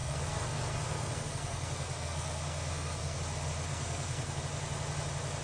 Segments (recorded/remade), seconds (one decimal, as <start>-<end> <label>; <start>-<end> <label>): 0.0-3.2 remade; 3.2-3.7 recorded; 3.7-4.4 remade; 4.4-5.4 recorded